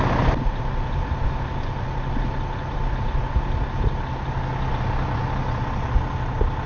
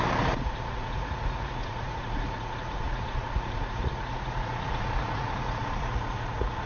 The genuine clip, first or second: first